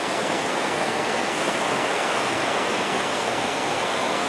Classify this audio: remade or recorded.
remade